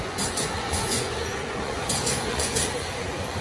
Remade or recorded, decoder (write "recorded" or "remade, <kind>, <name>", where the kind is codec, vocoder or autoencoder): remade, vocoder, Vocos